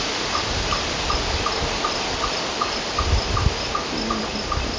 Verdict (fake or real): real